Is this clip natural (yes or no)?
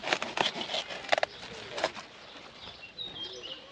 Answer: yes